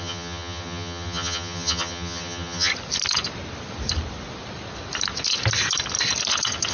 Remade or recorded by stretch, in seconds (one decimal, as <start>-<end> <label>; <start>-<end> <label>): 0.0-2.7 remade; 2.7-6.7 recorded